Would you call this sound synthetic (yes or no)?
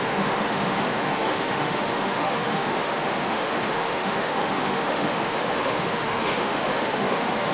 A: yes